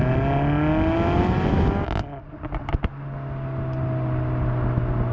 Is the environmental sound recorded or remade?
recorded